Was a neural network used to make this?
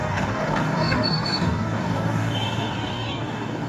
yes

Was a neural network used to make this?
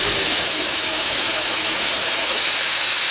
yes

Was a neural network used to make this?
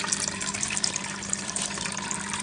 yes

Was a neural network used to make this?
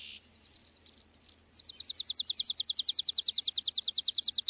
no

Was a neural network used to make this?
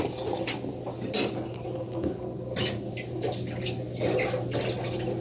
no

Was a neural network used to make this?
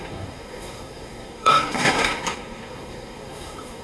yes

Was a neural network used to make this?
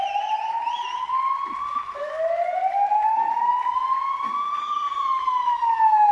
no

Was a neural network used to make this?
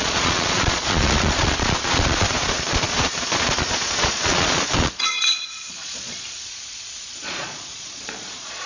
yes